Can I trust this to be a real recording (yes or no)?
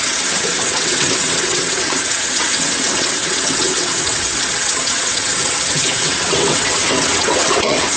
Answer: no